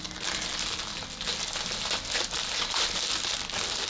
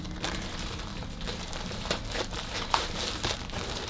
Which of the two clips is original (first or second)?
first